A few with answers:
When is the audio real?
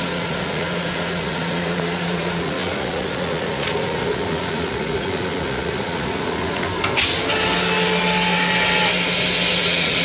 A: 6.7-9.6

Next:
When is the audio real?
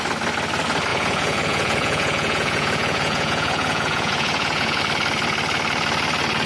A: 0.0-0.9; 4.8-6.5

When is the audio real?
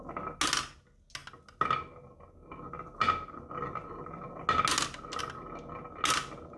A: 0.0-6.6